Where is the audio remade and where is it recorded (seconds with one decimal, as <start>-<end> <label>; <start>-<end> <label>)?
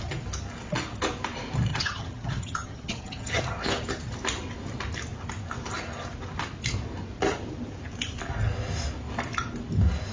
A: 0.0-1.7 recorded; 1.7-3.4 remade; 3.4-10.1 recorded